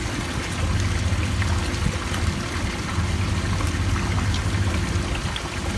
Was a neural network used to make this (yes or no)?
no